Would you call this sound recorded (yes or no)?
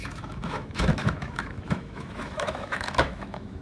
no